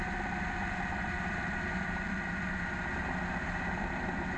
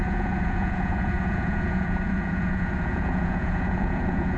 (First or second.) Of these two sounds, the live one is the first